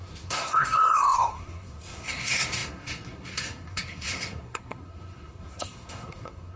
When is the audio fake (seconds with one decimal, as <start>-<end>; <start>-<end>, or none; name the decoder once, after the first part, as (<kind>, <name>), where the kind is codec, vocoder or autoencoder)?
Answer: 0.0-6.6 (codec, SNAC)